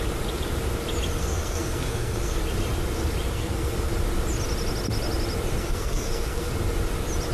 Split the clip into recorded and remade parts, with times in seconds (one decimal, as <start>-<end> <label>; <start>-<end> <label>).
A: 0.0-1.2 recorded; 1.2-2.4 remade; 2.4-3.3 recorded; 3.3-3.9 remade; 3.9-5.6 recorded; 5.6-6.5 remade; 6.5-7.3 recorded